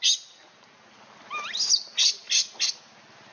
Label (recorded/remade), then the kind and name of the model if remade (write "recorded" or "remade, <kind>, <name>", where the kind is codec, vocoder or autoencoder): recorded